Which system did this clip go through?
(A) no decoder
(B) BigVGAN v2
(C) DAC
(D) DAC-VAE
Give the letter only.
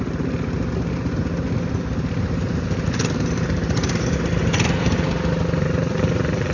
A